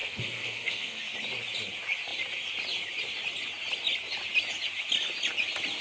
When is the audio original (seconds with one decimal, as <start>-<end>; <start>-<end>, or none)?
1.0-5.8

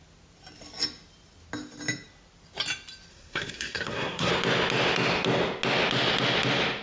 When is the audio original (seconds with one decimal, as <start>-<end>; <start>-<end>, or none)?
0.0-3.1; 4.3-6.8